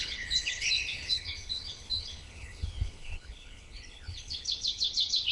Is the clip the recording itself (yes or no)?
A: no